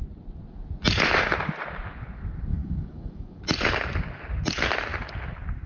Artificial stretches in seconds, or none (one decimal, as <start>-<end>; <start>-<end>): 2.5-3.4